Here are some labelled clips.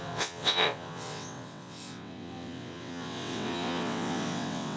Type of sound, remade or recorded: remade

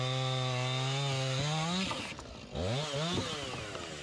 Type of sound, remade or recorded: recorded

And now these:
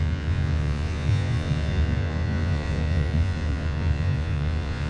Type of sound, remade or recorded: remade